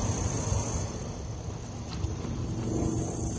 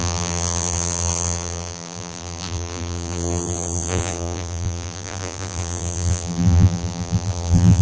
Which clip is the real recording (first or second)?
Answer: first